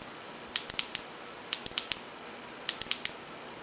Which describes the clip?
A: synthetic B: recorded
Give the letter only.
B